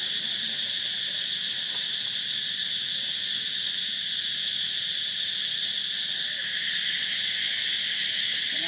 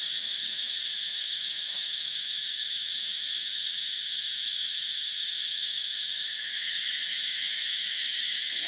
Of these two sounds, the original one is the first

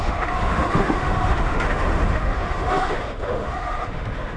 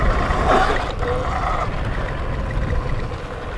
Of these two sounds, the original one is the second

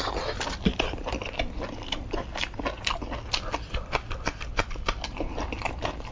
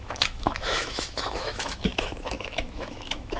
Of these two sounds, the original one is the first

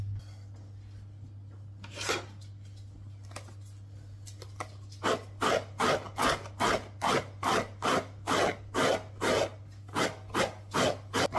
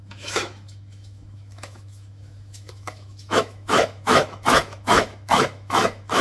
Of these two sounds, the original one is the first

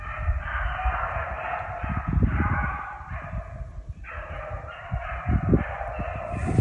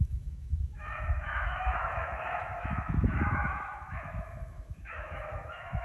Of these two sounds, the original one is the first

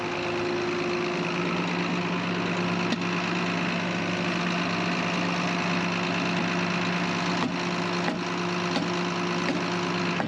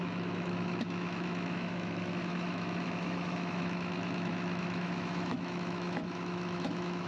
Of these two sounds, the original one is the first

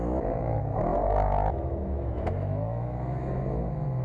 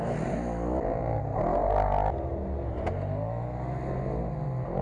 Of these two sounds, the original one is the second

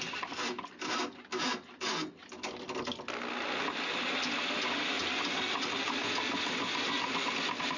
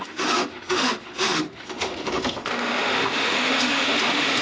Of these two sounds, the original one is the first